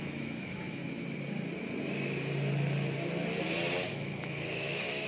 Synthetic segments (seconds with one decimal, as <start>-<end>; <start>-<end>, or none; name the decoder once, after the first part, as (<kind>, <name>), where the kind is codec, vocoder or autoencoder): 0.0-0.8 (autoencoder, DAC-VAE); 3.9-5.1